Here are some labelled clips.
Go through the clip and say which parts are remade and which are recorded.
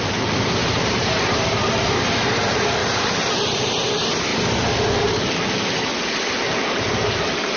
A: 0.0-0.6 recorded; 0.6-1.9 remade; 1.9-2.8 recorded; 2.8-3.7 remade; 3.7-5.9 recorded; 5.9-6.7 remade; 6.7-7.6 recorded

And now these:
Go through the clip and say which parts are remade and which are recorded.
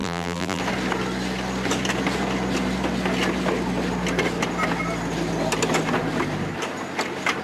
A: 0.0-0.6 remade; 0.6-7.4 recorded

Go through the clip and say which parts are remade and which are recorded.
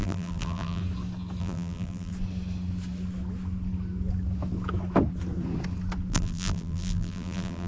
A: 0.0-0.8 remade; 0.8-1.4 recorded; 1.4-2.1 remade; 2.1-6.1 recorded; 6.1-7.7 remade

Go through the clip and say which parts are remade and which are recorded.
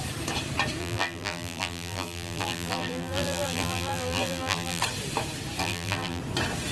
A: 0.0-0.8 recorded; 0.8-4.8 remade; 4.8-5.6 recorded; 5.6-6.2 remade; 6.2-6.7 recorded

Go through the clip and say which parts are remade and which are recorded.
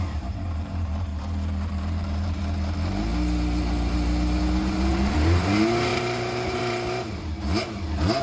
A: 0.0-1.1 remade; 1.1-2.0 recorded; 2.0-2.4 remade; 2.4-4.6 recorded; 4.6-8.2 remade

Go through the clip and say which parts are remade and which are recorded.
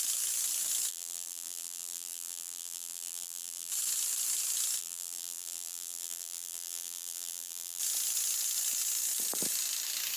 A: 0.0-0.9 recorded; 0.9-3.7 remade; 3.7-4.8 recorded; 4.8-7.8 remade; 7.8-10.2 recorded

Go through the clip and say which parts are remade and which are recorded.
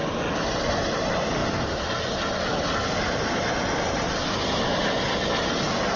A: 0.0-0.7 recorded; 0.7-1.4 remade; 1.4-4.6 recorded; 4.6-6.0 remade